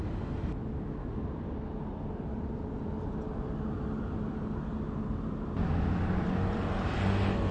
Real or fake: real